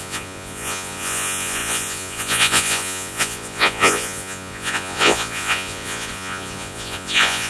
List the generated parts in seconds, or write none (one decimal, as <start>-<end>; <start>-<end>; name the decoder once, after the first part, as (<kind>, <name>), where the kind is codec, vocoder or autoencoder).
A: 0.0-7.5 (vocoder, Vocos)